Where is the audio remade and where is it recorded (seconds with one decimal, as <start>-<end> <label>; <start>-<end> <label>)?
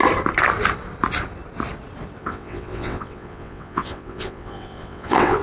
0.0-2.2 recorded; 2.2-5.4 remade